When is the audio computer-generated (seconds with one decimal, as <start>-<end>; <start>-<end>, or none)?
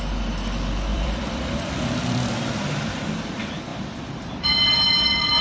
0.9-3.1; 3.7-5.4